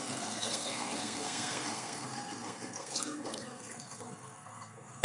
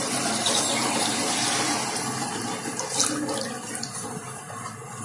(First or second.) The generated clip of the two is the first